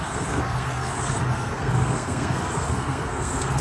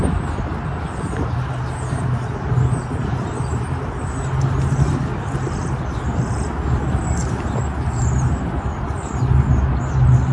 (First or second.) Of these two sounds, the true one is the second